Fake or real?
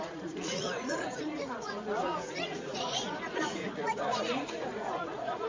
fake